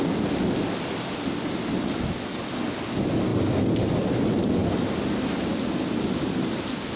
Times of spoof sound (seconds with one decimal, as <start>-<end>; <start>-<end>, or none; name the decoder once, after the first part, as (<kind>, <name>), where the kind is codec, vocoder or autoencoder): none